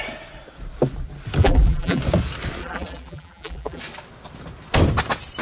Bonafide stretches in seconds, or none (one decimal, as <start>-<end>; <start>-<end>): 0.0-1.4; 2.0-2.6; 3.8-5.4